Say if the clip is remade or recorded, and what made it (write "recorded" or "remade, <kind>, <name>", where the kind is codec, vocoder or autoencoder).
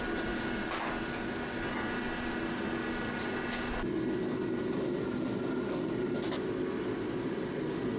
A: recorded